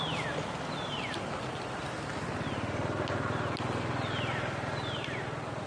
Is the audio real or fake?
real